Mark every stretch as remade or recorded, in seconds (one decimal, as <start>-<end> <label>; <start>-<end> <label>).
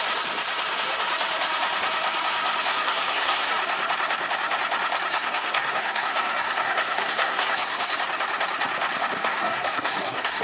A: 0.0-2.7 recorded; 2.7-3.5 remade; 3.5-5.1 recorded; 5.1-7.9 remade; 7.9-9.2 recorded; 9.2-10.4 remade